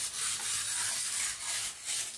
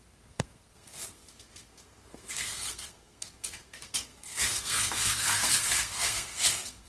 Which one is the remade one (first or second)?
second